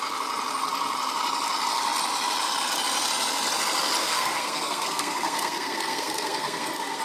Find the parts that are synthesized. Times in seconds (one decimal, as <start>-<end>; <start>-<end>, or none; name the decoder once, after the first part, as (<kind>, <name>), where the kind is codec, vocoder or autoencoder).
4.0-7.0 (codec, SNAC)